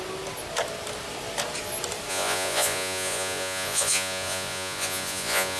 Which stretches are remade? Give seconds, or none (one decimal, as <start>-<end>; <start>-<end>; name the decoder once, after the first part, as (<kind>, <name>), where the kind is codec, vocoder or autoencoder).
2.1-5.6 (vocoder, Vocos)